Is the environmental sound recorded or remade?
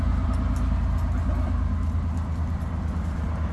recorded